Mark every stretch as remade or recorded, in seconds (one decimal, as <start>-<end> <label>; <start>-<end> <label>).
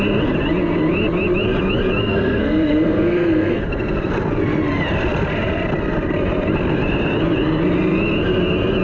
0.0-2.0 recorded; 2.0-3.6 remade; 3.6-8.8 recorded